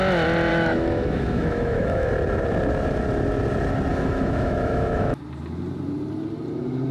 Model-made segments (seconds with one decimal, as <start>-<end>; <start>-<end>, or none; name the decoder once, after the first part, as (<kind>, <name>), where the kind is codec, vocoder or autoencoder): 0.5-2.1 (autoencoder, DAC-VAE); 3.9-5.2

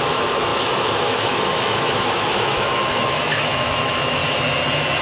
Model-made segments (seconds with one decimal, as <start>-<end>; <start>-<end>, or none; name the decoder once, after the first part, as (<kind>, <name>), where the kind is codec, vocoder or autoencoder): 0.0-4.2 (autoencoder, DAC-VAE)